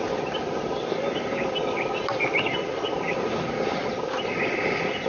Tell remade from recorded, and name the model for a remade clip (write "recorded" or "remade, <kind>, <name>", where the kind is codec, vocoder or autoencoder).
recorded